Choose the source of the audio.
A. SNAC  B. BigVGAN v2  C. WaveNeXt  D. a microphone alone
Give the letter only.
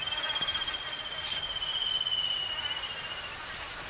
D